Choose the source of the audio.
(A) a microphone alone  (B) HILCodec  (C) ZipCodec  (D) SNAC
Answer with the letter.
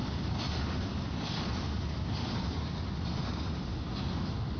A